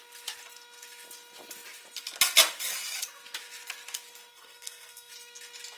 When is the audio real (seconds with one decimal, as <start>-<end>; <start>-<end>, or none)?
0.0-4.3; 5.1-5.8